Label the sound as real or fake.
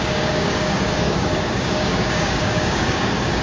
fake